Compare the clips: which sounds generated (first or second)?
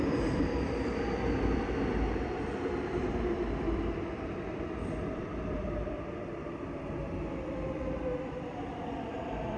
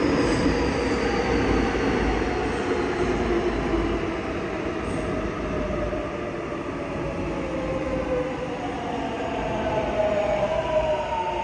first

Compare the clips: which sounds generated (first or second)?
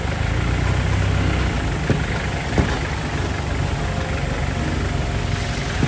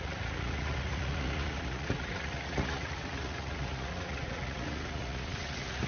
second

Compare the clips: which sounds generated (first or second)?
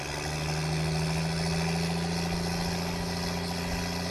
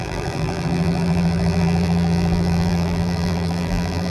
second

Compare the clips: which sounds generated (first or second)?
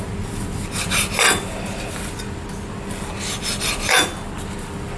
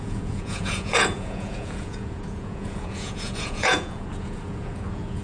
second